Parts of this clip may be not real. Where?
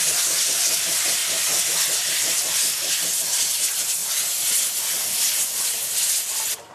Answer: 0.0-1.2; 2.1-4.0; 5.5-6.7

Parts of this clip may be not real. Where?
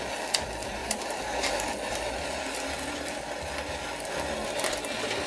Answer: 0.8-1.4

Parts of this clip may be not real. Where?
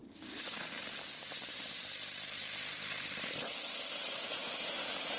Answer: 0.0-1.6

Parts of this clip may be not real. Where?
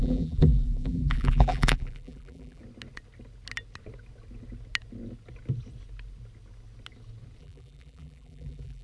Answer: 0.0-2.6; 7.4-8.8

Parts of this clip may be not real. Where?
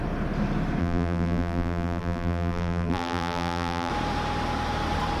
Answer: 0.8-3.9